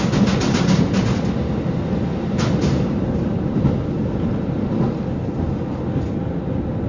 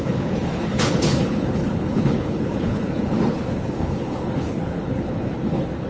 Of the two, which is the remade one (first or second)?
second